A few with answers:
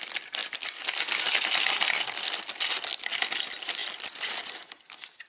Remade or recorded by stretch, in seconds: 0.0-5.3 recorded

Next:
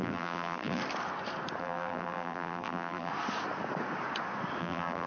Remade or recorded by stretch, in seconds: 0.0-0.8 remade; 0.8-1.6 recorded; 1.6-3.1 remade; 3.1-4.6 recorded; 4.6-5.1 remade

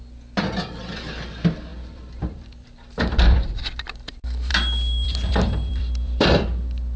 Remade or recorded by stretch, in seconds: 0.0-1.7 recorded; 1.7-3.8 remade; 3.8-4.5 recorded; 4.5-6.3 remade; 6.3-7.0 recorded

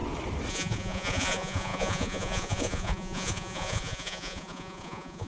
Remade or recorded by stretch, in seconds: 0.0-0.5 recorded; 0.5-5.3 remade

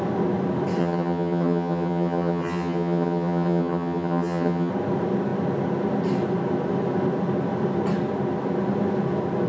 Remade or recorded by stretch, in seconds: 0.0-0.8 recorded; 0.8-4.7 remade; 4.7-9.5 recorded